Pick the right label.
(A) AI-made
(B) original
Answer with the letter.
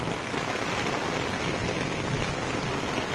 B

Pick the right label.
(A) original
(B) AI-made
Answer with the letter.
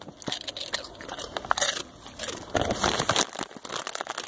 A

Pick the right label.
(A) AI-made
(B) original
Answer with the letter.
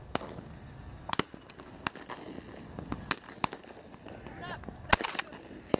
B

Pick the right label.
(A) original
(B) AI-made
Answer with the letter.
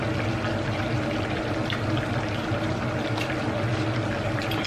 A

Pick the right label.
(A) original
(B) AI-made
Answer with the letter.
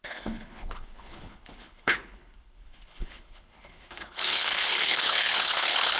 B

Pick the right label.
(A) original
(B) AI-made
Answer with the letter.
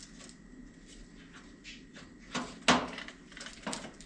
A